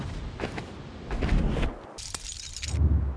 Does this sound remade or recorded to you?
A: recorded